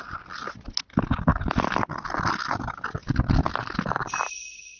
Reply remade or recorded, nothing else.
recorded